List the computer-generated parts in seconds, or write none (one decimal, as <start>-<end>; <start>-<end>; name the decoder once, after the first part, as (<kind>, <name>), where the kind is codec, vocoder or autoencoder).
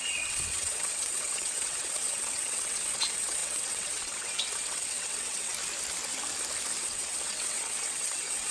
0.0-5.5 (vocoder, WaveNeXt); 6.8-8.5